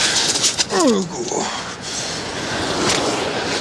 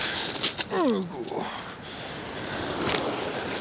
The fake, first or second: first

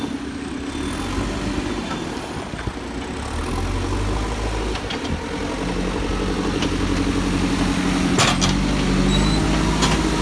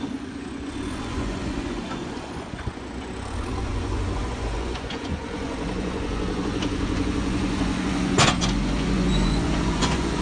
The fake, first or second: second